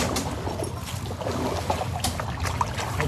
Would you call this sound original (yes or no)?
yes